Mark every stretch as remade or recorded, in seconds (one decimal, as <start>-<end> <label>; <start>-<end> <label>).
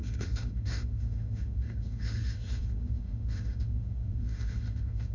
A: 0.0-5.1 remade